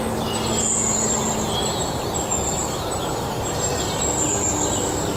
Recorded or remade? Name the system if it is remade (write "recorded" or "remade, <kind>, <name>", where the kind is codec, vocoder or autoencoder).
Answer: recorded